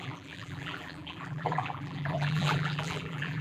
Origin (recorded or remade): remade